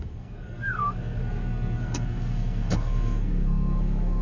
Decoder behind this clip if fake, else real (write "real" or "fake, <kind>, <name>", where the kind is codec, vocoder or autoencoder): fake, codec, SNAC